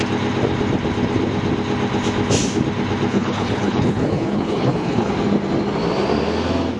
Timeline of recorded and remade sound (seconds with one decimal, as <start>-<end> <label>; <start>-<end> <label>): 0.0-3.1 recorded; 3.1-5.1 remade; 5.1-6.8 recorded